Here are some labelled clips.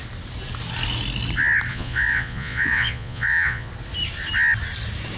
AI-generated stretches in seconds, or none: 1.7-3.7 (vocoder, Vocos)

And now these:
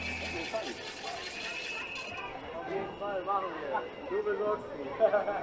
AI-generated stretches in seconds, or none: none

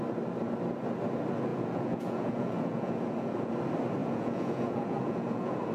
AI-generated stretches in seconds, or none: 1.5-3.5 (vocoder, Vocos); 4.0-5.7